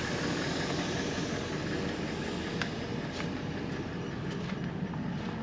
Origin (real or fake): real